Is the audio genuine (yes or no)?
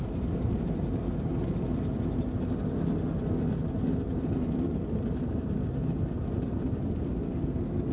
yes